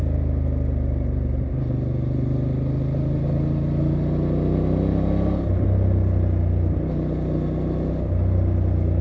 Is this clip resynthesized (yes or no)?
no